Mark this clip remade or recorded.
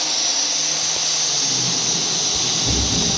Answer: recorded